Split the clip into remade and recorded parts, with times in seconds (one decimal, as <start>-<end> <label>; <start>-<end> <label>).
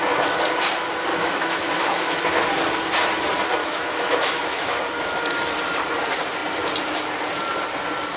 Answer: 0.0-1.1 recorded; 1.1-2.2 remade; 2.2-3.6 recorded; 3.6-4.8 remade; 4.8-8.2 recorded